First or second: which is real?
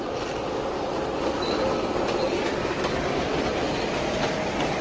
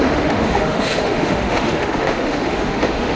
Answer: first